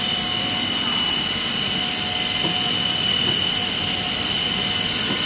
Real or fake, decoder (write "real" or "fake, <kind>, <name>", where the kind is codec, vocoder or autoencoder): real